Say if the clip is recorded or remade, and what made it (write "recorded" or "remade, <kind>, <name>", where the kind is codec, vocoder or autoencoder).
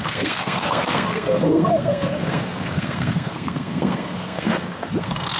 remade, codec, SNAC